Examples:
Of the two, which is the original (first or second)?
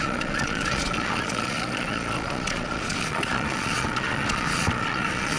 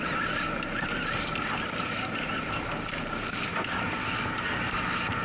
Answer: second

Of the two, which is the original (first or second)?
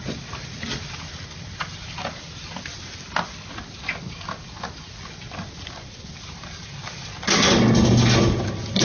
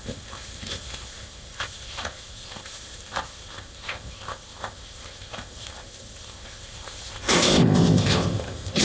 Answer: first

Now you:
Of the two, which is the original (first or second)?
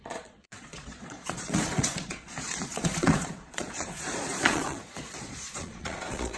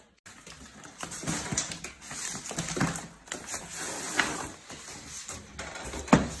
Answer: second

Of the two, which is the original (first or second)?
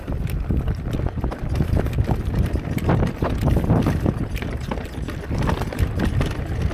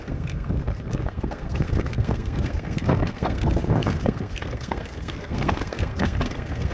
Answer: first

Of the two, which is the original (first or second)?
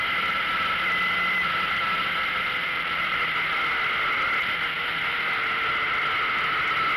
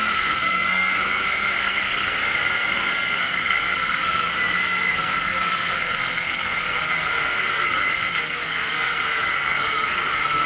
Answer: first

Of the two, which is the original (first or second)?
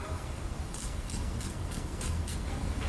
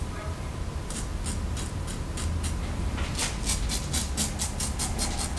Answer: second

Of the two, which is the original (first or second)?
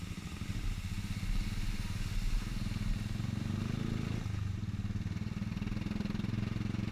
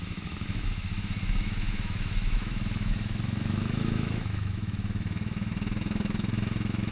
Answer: first